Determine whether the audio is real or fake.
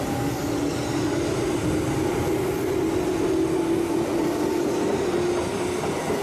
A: real